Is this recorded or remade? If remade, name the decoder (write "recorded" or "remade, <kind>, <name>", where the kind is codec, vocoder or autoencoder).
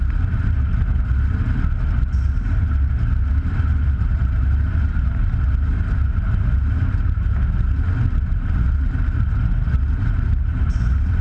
recorded